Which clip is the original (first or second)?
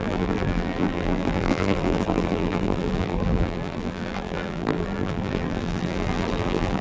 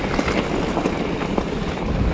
second